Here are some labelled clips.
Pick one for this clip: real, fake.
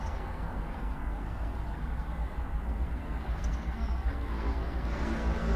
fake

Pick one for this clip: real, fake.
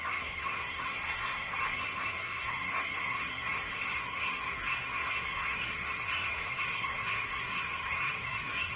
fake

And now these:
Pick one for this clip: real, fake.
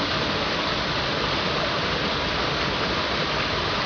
real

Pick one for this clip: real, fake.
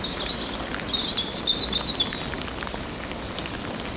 real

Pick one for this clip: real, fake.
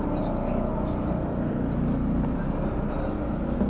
real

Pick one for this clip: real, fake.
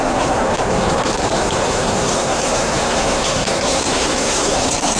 fake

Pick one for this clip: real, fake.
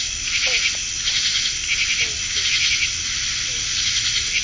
real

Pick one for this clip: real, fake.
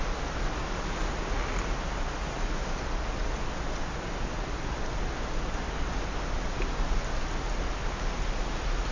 real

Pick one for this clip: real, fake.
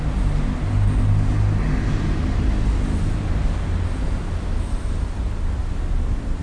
real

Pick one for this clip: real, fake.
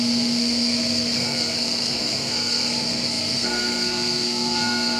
fake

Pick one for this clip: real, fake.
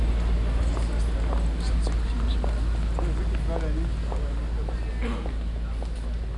real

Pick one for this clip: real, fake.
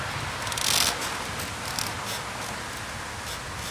real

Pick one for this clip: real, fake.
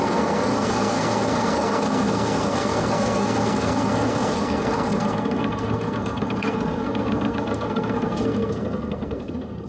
fake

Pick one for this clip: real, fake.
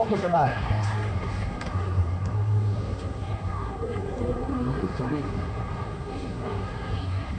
fake